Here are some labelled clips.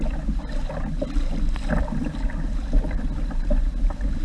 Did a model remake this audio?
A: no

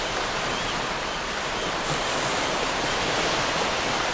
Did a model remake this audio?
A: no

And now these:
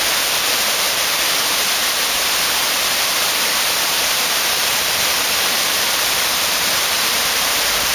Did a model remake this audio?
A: yes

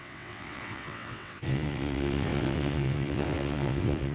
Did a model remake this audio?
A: yes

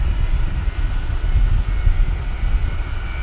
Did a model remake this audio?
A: no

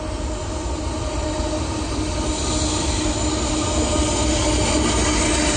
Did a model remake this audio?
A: no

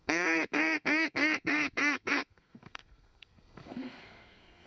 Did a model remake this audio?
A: yes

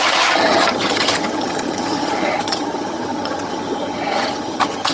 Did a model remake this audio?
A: yes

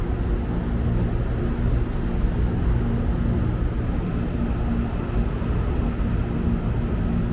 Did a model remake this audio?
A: no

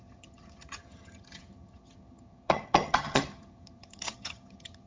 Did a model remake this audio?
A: yes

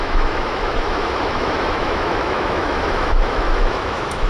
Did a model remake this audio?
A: yes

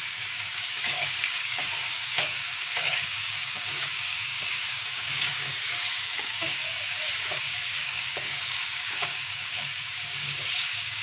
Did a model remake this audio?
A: yes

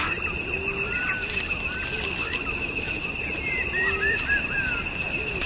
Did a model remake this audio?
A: no